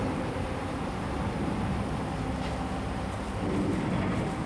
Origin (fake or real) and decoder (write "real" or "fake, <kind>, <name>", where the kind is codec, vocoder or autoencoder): real